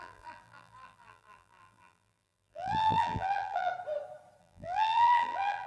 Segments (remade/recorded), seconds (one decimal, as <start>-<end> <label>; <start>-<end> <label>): 0.0-3.7 remade; 3.7-4.4 recorded; 4.4-5.7 remade